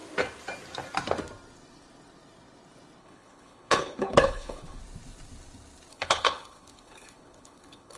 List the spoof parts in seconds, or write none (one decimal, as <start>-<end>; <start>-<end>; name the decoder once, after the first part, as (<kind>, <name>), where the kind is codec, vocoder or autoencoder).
3.0-4.8 (codec, HILCodec); 5.9-8.0

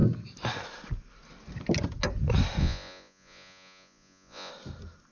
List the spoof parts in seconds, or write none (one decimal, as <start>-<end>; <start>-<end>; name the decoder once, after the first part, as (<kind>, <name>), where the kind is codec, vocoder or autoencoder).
2.6-4.5 (vocoder, Vocos)

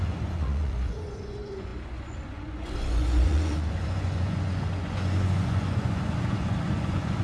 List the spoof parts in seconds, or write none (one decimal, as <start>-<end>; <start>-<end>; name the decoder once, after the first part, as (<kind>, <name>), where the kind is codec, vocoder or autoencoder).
0.0-7.2 (vocoder, Vocos)